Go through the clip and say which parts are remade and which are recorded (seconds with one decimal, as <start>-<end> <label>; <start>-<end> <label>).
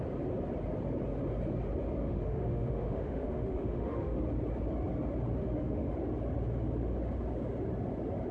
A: 0.0-2.0 recorded; 2.0-4.2 remade; 4.2-5.4 recorded; 5.4-5.9 remade; 5.9-8.3 recorded